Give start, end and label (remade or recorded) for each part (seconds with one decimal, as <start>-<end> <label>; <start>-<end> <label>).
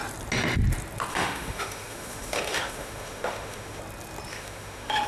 0.0-1.1 recorded; 1.1-3.8 remade; 3.8-4.3 recorded; 4.3-5.1 remade